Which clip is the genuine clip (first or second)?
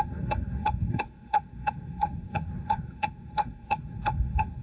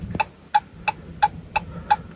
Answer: second